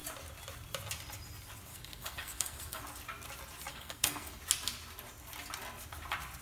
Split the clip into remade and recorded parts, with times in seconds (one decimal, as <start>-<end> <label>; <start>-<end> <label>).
0.0-1.7 recorded; 1.7-2.8 remade; 2.8-3.7 recorded; 3.7-4.4 remade; 4.4-6.4 recorded